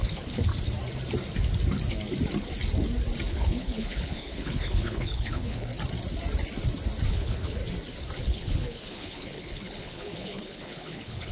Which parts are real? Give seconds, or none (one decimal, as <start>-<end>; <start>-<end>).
0.5-3.3; 5.7-7.1; 7.6-8.2